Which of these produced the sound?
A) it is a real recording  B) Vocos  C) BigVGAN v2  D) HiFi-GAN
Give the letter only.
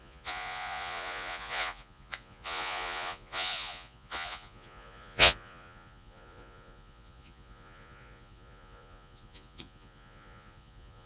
B